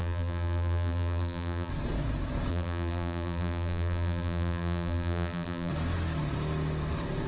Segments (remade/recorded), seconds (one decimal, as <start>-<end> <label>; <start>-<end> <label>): 0.0-1.7 remade; 1.7-2.5 recorded; 2.5-5.7 remade; 5.7-7.3 recorded